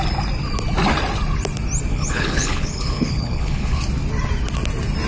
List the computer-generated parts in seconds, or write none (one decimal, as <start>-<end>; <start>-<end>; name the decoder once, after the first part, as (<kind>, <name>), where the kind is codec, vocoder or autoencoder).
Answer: 1.9-3.8 (codec, HILCodec)